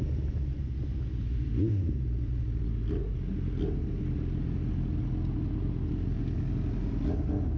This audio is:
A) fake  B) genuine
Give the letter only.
B